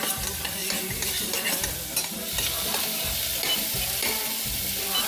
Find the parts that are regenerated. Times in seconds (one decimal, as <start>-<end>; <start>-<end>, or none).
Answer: none